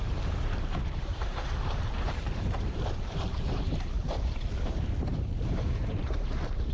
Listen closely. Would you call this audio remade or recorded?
remade